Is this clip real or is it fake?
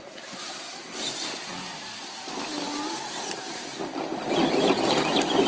real